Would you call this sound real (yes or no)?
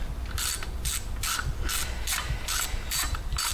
yes